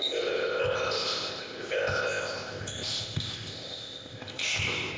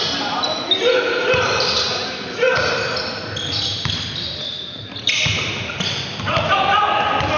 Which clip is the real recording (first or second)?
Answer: second